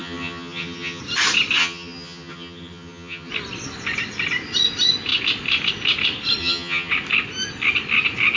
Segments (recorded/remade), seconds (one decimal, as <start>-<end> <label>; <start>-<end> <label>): 0.0-1.0 remade; 1.0-1.6 recorded; 1.6-3.3 remade; 3.3-6.4 recorded; 6.4-6.9 remade; 6.9-8.4 recorded